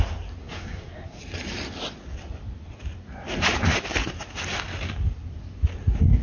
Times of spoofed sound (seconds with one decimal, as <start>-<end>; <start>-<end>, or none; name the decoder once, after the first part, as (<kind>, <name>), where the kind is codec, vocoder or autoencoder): 0.4-1.2 (codec, SNAC)